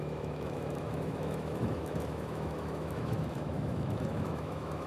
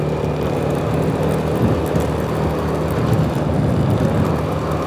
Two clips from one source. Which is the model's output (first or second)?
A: first